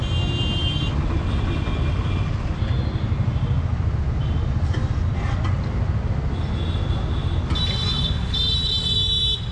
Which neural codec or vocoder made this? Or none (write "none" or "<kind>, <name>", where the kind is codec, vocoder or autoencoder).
none